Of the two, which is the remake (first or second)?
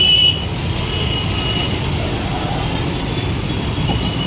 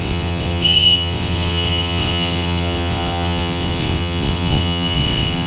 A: second